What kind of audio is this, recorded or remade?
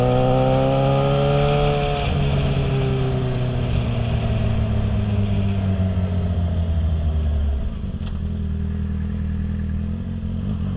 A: recorded